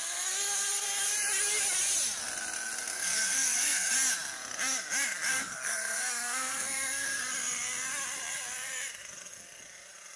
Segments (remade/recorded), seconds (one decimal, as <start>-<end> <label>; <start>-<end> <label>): 0.0-2.9 recorded; 2.9-3.9 remade; 3.9-5.3 recorded; 5.3-7.2 remade; 7.2-10.2 recorded